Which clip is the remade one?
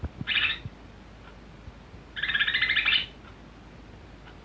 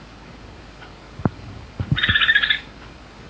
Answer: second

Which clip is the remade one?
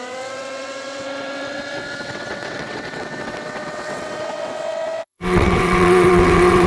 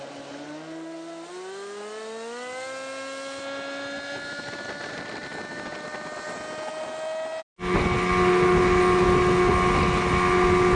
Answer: first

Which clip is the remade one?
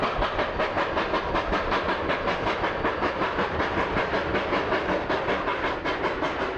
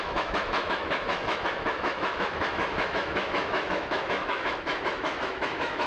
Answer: second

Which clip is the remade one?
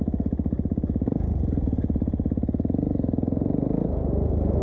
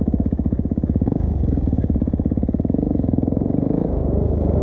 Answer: second